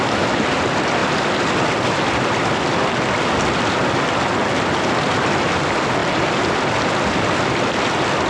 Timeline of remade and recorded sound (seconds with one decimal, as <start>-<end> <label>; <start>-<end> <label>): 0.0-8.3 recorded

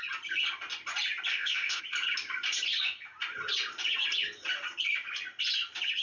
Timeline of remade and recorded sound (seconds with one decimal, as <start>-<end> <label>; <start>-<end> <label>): 0.0-1.3 recorded; 1.3-1.8 remade; 1.8-6.0 recorded

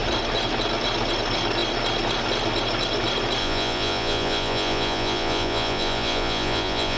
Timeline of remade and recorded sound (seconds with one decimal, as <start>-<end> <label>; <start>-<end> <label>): 0.0-3.4 recorded; 3.4-7.0 remade

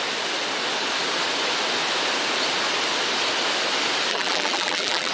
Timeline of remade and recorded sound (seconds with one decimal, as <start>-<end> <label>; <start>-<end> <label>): 0.0-4.1 recorded; 4.1-5.1 remade

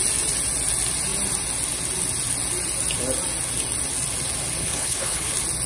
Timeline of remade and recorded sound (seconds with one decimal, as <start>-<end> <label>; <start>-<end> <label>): 0.0-4.6 recorded; 4.6-5.3 remade; 5.3-5.7 recorded

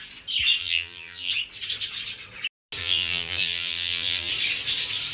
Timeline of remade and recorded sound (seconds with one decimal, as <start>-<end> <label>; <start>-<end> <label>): 0.0-0.6 recorded; 0.6-1.3 remade; 1.3-2.8 recorded; 2.8-4.3 remade; 4.3-5.1 recorded

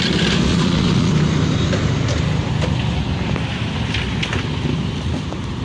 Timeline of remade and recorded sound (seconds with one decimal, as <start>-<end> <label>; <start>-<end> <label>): 0.0-0.5 recorded; 0.5-1.1 remade; 1.1-5.6 recorded

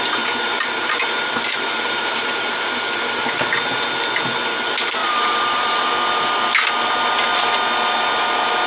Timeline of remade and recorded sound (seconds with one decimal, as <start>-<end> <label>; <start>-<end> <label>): 0.0-0.5 recorded; 0.5-3.4 remade; 3.4-5.0 recorded; 5.0-5.9 remade; 5.9-8.7 recorded